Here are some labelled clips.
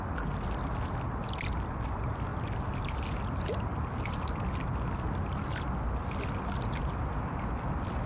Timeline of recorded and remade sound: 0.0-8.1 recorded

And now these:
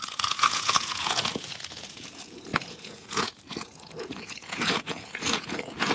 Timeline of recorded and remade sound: 0.0-5.9 remade

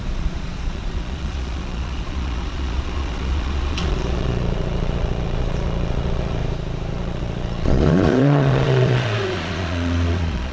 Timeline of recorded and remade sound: 0.0-6.4 remade; 6.4-6.9 recorded; 6.9-10.5 remade